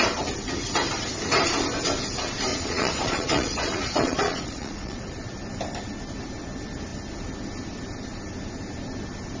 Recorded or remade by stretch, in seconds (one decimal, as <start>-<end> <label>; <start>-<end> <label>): 0.0-2.5 recorded; 2.5-5.0 remade; 5.0-9.4 recorded